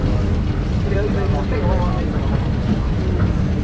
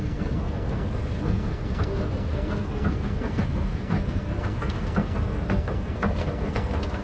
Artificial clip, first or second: second